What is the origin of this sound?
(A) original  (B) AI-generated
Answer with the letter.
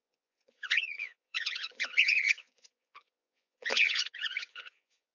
B